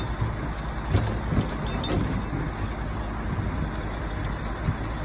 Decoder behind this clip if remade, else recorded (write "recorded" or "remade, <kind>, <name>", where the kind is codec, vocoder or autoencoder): recorded